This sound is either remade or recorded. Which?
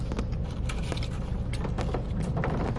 recorded